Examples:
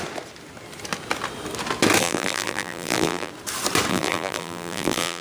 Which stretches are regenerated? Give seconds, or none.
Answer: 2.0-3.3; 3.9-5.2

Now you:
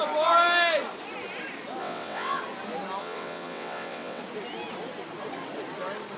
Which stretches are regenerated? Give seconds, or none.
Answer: 1.8-2.4; 3.0-4.2